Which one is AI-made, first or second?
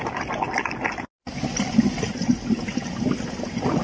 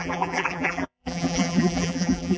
second